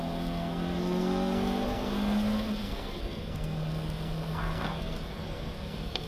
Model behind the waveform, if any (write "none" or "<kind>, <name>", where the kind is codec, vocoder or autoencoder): codec, SNAC